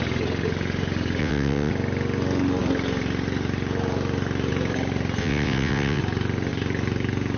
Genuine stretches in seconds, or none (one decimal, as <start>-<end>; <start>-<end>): 0.0-1.2; 1.7-5.2; 6.0-7.4